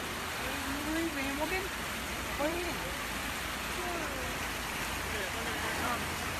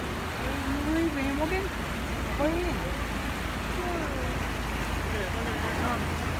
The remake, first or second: first